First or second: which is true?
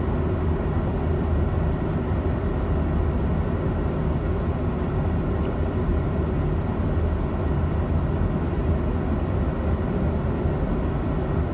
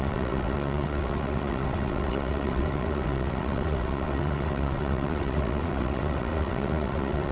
first